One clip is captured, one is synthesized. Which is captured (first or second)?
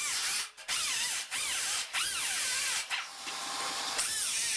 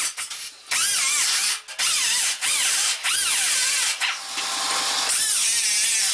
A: second